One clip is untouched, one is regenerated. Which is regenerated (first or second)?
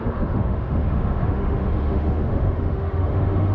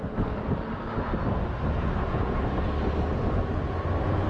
first